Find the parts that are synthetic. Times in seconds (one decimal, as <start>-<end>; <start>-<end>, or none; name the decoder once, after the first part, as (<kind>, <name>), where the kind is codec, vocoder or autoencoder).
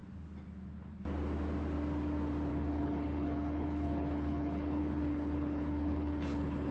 2.5-6.7 (codec, HILCodec)